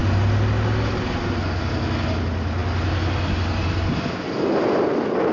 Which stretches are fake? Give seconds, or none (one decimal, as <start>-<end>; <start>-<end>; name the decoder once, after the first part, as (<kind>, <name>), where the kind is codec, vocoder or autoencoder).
none